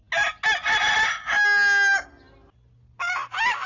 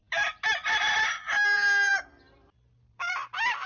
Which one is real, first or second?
first